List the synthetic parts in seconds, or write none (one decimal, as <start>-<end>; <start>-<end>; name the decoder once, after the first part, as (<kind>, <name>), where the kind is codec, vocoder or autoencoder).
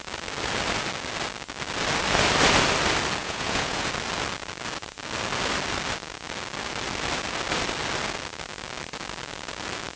3.2-3.9 (vocoder, Vocos)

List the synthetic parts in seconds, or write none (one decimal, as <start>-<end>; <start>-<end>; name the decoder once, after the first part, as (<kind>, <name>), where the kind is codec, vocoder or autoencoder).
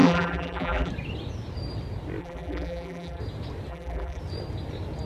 0.0-0.9 (vocoder, BigVGAN v2); 2.2-3.2; 3.7-4.2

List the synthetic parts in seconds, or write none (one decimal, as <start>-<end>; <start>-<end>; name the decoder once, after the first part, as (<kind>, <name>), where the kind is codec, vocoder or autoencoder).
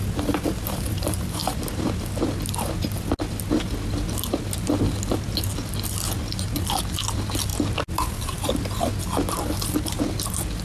none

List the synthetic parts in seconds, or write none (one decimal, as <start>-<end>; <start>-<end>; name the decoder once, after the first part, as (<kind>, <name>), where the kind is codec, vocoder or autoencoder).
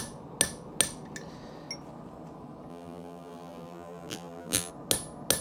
2.7-4.7 (vocoder, BigVGAN v2)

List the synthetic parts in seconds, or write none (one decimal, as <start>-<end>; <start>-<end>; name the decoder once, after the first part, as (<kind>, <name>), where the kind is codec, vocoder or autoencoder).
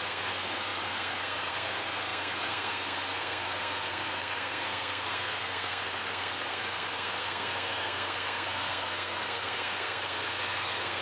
0.0-11.0 (codec, SNAC)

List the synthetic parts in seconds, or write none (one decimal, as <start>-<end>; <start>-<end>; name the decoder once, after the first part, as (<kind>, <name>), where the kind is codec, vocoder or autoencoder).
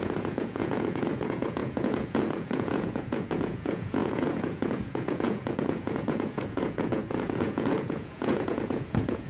0.0-9.3 (vocoder, Vocos)